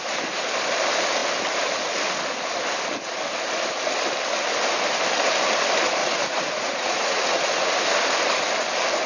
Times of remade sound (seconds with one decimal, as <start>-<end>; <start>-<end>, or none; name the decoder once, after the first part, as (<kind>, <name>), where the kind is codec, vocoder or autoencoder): 6.0-7.7 (vocoder, Vocos)